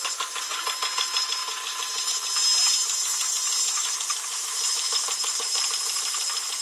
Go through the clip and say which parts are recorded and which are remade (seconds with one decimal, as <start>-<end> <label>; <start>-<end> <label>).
0.0-3.8 recorded; 3.8-6.6 remade